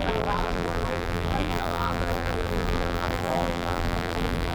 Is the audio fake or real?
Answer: fake